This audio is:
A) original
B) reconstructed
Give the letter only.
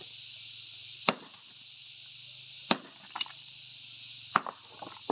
A